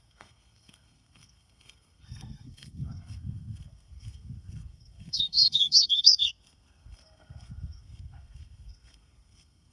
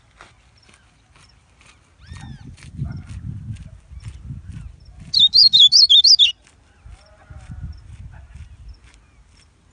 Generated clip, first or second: first